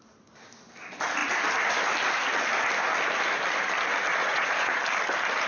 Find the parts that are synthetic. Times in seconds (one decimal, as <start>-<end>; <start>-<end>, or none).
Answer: 4.2-4.8